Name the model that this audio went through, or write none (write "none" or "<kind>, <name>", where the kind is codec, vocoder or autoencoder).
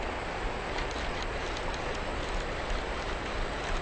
none